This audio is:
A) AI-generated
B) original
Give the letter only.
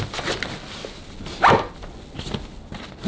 B